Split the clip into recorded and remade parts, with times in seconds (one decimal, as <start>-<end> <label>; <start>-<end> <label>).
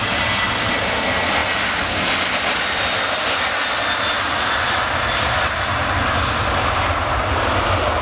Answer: 0.0-8.0 recorded